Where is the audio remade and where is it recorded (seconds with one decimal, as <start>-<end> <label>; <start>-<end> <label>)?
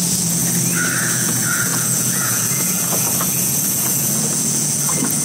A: 0.0-0.4 remade; 0.4-1.0 recorded; 1.0-5.2 remade